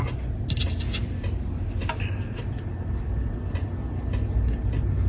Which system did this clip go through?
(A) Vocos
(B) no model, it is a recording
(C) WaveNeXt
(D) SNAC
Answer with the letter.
B